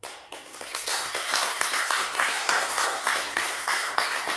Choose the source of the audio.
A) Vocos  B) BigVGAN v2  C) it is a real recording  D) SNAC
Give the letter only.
D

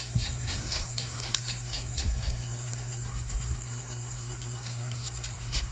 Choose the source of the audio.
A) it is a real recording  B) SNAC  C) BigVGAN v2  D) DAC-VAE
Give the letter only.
B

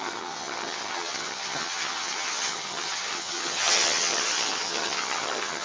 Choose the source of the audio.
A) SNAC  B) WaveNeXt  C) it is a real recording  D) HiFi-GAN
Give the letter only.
D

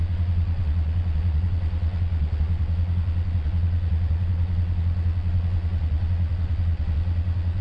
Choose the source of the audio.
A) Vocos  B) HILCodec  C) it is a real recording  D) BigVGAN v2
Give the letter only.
A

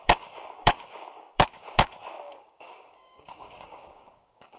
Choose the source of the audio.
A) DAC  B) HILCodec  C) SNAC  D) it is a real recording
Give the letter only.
A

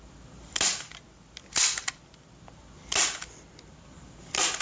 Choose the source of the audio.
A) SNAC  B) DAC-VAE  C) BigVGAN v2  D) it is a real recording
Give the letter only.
D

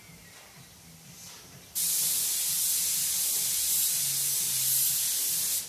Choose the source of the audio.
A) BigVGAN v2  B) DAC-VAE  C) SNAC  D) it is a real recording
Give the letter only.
D